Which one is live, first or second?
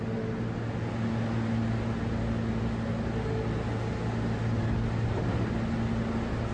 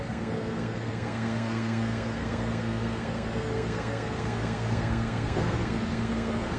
first